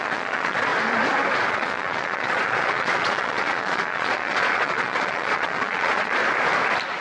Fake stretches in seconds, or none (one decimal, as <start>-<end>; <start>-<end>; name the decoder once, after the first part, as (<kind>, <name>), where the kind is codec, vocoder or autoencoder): 0.0-0.7 (vocoder, Vocos); 1.5-6.2